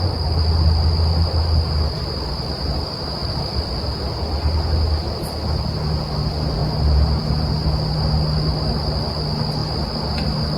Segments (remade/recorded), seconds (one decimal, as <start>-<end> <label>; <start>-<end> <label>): 0.0-3.2 recorded; 3.2-3.7 remade; 3.7-10.6 recorded